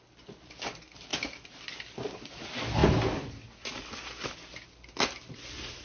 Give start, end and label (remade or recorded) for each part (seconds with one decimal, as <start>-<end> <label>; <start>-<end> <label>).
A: 0.0-5.8 recorded